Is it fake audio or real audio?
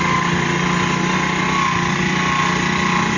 real